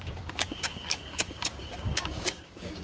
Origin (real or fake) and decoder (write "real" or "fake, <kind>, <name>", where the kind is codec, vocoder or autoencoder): fake, codec, DAC